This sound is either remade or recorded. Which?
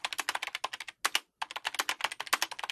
recorded